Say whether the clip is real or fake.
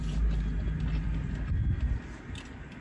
real